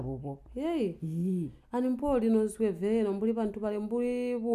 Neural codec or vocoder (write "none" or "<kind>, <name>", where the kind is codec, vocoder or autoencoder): none